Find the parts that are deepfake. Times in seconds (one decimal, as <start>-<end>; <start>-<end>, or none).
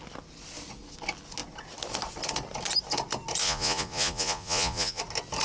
3.4-5.0